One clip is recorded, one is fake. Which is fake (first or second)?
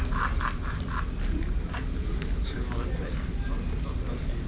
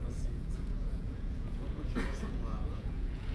second